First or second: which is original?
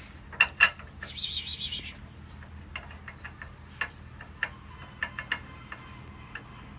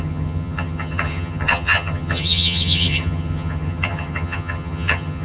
first